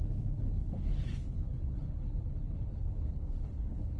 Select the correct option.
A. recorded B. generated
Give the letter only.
B